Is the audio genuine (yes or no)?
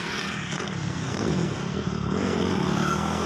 no